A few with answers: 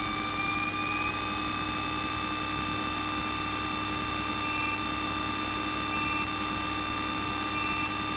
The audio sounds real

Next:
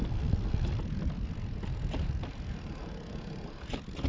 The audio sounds real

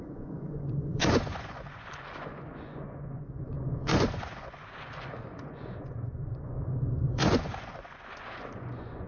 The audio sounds fake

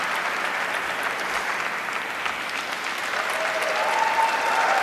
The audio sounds real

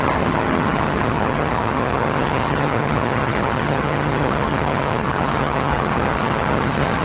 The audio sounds fake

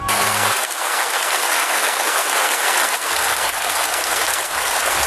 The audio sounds fake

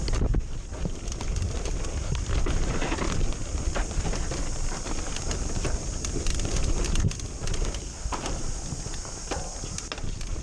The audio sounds real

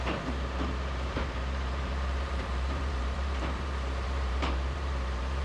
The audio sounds fake